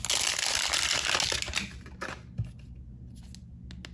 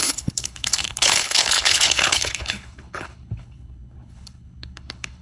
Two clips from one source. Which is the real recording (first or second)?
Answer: first